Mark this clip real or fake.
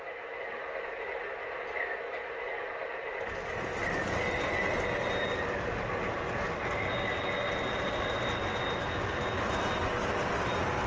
real